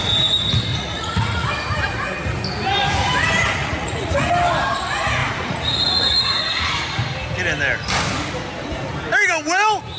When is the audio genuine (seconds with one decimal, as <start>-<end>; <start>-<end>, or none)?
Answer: 0.0-0.7; 1.5-3.6; 4.3-5.2; 6.7-10.0